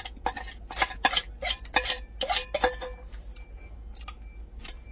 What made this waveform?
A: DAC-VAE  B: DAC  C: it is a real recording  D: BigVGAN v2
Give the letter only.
C